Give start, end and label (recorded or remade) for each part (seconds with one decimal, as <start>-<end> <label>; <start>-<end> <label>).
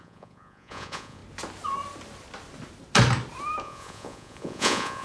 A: 0.0-1.2 remade; 1.2-3.6 recorded; 3.6-5.0 remade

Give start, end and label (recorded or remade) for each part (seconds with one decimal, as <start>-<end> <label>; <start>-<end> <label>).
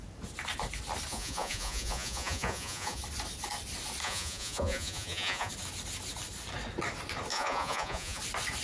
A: 0.0-1.1 recorded; 1.1-3.0 remade; 3.0-4.0 recorded; 4.0-5.5 remade; 5.5-7.3 recorded; 7.3-8.2 remade; 8.2-8.6 recorded